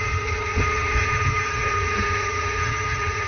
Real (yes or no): no